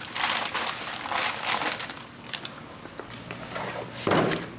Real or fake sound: real